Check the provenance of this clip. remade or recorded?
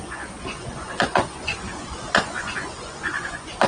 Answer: remade